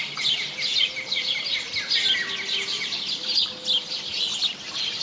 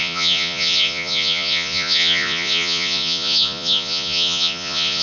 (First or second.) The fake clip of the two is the second